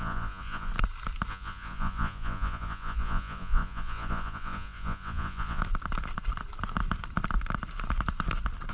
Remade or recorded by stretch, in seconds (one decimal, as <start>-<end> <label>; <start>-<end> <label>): 0.0-0.7 remade; 0.7-1.3 recorded; 1.3-5.6 remade; 5.6-8.7 recorded

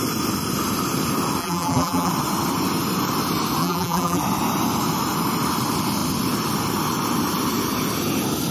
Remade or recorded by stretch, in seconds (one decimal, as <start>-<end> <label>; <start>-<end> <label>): 0.0-1.4 recorded; 1.4-2.1 remade; 2.1-3.6 recorded; 3.6-4.2 remade; 4.2-8.5 recorded

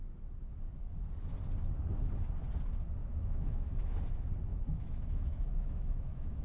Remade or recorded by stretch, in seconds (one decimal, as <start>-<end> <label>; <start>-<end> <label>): 0.0-3.0 recorded; 3.0-4.0 remade; 4.0-4.5 recorded; 4.5-6.4 remade

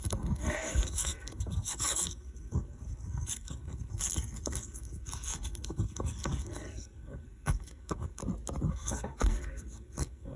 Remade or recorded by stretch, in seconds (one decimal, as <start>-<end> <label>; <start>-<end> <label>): 0.0-8.2 remade; 8.2-8.7 recorded; 8.7-10.4 remade

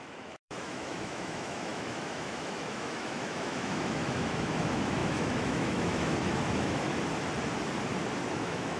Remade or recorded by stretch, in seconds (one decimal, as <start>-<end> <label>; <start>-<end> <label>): 0.0-6.9 remade; 6.9-8.3 recorded; 8.3-8.8 remade

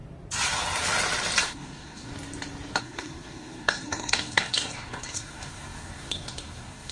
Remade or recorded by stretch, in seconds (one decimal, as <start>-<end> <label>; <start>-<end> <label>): 0.0-1.4 recorded; 1.4-2.1 remade; 2.1-2.8 recorded; 2.8-6.9 remade

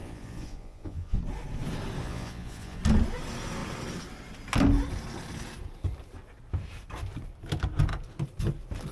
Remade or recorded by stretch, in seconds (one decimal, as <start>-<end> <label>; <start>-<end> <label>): 0.0-1.2 remade; 1.2-2.0 recorded; 2.0-2.8 remade; 2.8-8.9 recorded